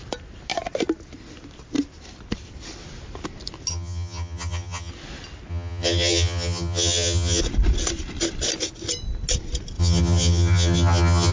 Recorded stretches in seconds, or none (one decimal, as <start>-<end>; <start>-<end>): 0.0-3.7; 4.9-5.5; 7.4-9.8